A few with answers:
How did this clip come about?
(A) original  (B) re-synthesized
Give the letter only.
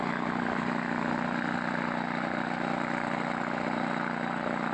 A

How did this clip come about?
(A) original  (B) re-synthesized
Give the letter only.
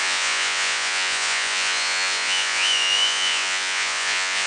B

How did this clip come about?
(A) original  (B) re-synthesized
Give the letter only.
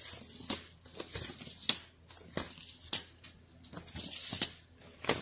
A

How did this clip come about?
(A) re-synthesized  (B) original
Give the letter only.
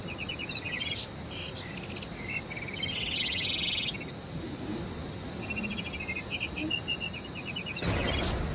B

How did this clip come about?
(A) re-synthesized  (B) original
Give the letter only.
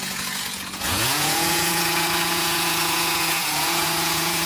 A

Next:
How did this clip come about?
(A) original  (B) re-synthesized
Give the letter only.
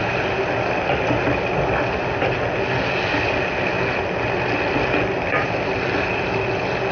A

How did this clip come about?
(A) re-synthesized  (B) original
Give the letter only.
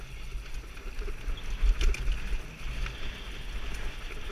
B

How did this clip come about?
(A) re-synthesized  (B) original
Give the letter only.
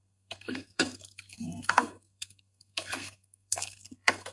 A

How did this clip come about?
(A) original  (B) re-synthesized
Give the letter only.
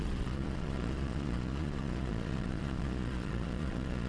B